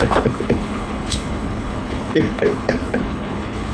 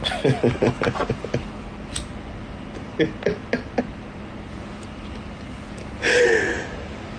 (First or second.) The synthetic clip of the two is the first